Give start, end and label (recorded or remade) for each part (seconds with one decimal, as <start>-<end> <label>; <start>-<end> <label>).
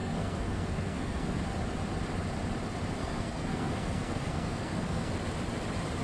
0.0-1.4 remade; 1.4-3.0 recorded; 3.0-5.1 remade; 5.1-6.0 recorded